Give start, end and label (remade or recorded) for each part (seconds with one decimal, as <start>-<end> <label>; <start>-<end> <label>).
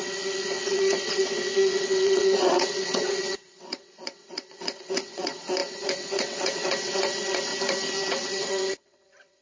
0.0-7.5 remade; 7.5-8.1 recorded; 8.1-9.4 remade